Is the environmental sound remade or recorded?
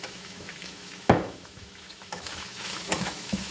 remade